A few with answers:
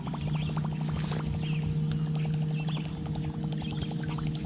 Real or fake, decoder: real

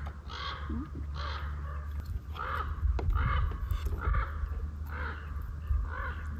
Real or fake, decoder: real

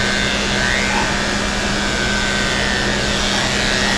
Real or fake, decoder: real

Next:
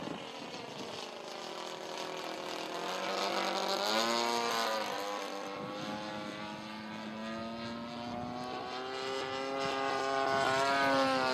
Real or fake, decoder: real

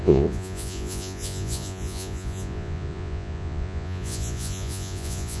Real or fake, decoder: fake, vocoder, Vocos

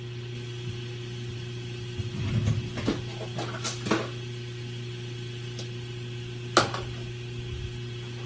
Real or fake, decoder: real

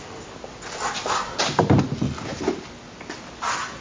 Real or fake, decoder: real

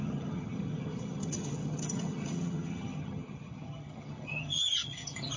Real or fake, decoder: fake, vocoder, HiFi-GAN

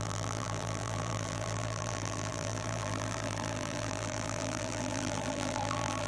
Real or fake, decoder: fake, vocoder, BigVGAN v2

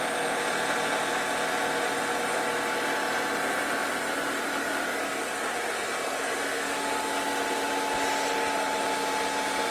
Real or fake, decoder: real